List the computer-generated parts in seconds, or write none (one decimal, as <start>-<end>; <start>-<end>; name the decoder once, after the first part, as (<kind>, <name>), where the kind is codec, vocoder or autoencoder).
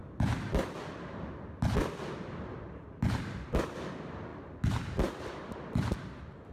none